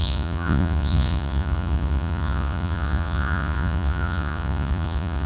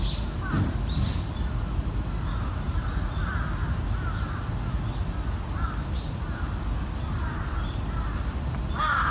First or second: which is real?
second